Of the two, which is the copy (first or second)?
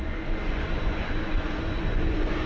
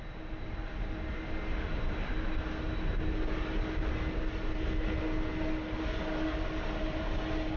first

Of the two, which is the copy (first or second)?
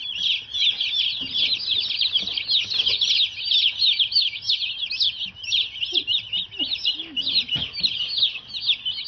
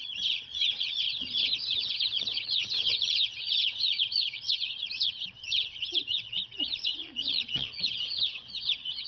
second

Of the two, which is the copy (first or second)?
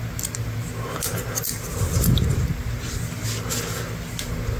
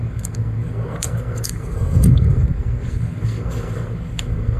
second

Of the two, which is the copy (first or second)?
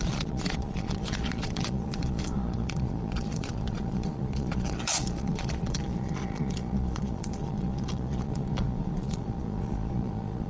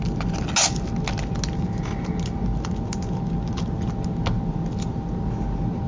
first